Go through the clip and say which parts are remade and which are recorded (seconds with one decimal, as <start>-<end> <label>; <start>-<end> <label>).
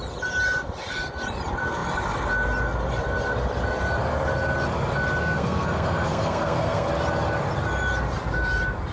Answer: 0.0-5.2 recorded; 5.2-6.9 remade; 6.9-8.9 recorded